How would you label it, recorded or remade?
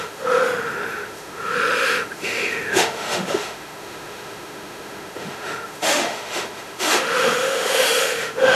remade